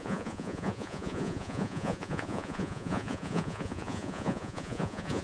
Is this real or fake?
fake